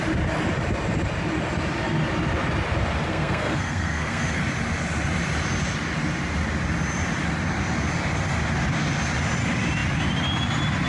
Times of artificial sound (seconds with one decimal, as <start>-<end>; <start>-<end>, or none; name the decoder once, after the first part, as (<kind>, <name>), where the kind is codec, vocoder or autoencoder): 3.1-4.4 (codec, SNAC)